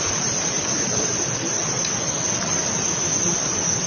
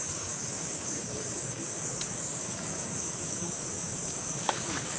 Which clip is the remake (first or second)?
second